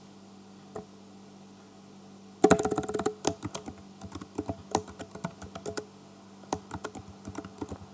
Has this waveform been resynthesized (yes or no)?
no